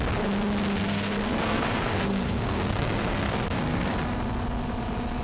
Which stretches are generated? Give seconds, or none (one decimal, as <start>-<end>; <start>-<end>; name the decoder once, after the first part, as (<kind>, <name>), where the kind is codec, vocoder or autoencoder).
0.8-3.9 (codec, SNAC)